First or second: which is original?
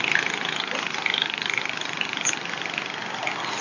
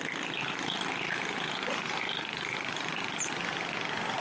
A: second